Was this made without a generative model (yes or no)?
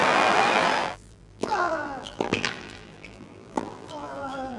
no